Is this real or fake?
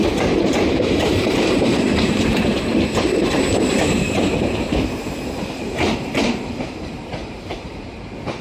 fake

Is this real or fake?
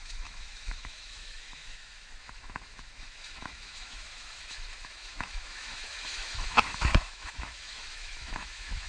fake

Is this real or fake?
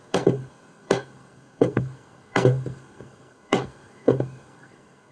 fake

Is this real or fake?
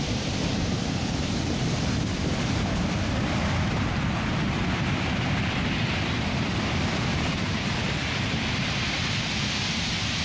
fake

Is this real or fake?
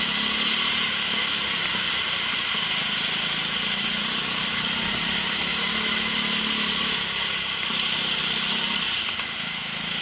real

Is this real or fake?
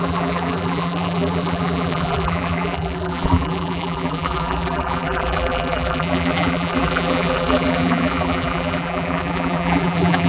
fake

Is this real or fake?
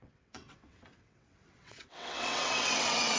fake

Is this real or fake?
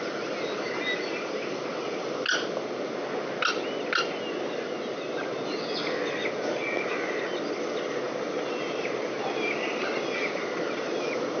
real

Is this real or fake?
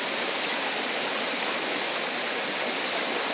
real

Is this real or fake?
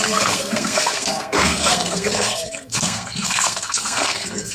fake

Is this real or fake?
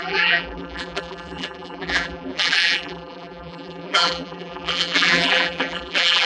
fake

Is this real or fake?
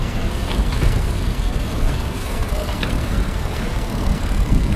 fake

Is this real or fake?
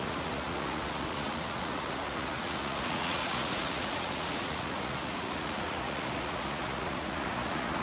fake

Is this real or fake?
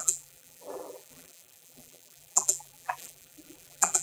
fake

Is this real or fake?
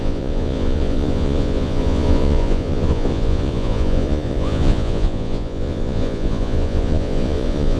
fake